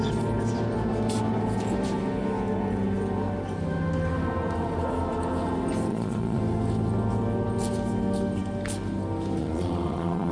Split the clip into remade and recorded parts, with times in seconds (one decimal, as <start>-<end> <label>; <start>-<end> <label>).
0.0-5.9 recorded; 5.9-6.4 remade; 6.4-9.4 recorded; 9.4-10.3 remade